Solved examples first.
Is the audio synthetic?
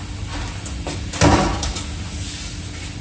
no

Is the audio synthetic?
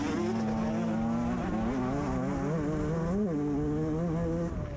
no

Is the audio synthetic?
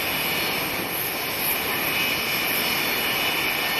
no